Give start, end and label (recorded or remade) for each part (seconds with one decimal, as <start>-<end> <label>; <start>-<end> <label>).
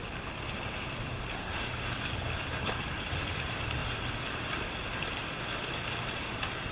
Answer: 0.0-6.7 remade